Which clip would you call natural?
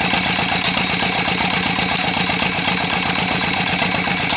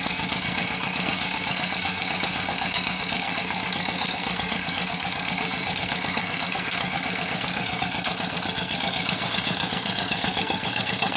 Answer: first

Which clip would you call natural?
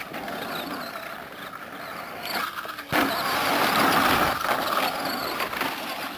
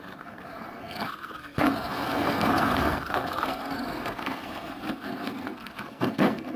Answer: first